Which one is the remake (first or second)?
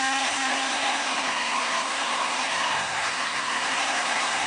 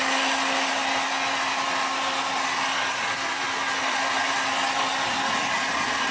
first